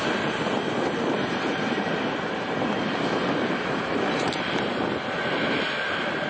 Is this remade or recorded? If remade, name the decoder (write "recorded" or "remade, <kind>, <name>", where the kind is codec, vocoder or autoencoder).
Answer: remade, vocoder, BigVGAN v2